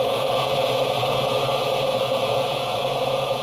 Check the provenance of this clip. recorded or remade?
remade